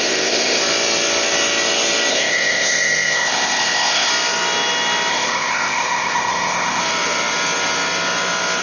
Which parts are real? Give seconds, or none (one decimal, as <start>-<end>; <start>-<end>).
0.6-2.1; 4.1-5.1; 6.8-8.6